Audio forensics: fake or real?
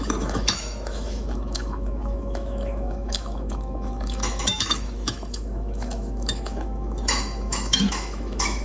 fake